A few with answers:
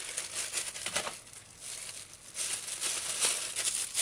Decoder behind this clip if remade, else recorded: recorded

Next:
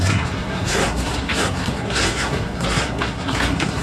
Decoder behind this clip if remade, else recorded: remade, codec, SNAC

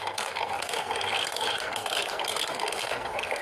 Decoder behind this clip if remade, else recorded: remade, codec, SNAC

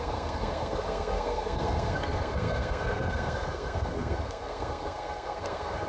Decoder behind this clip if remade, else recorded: remade, codec, SNAC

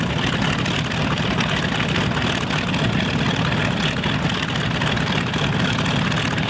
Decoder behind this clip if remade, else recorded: recorded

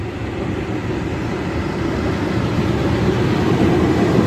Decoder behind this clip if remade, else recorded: recorded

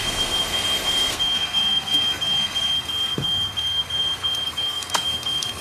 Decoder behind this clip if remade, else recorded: remade, codec, SNAC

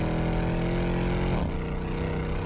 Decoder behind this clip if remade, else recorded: recorded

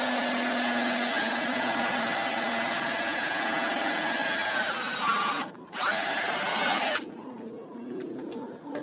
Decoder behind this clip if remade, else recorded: recorded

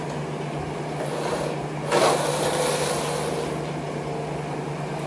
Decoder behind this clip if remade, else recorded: recorded